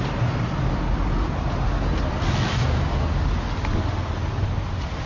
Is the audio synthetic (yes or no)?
no